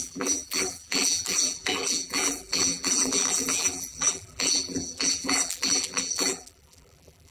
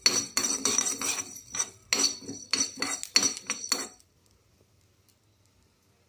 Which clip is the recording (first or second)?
second